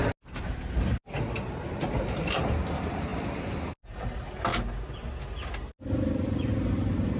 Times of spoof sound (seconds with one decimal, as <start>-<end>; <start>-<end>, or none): none